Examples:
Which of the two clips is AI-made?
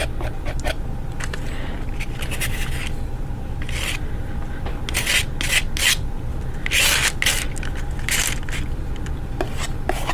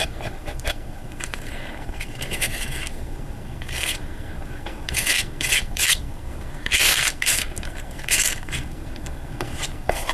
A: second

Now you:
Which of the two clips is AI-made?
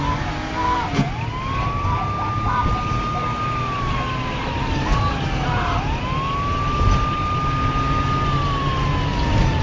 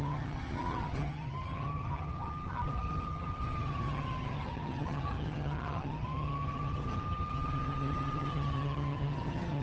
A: second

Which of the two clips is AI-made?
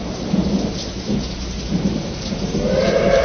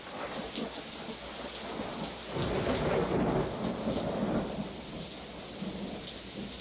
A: first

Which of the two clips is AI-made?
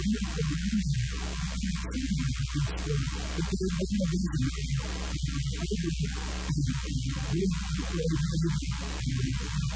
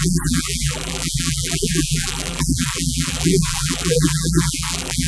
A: second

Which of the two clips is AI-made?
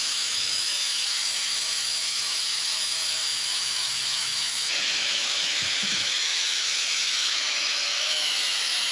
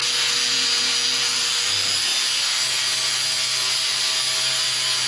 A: first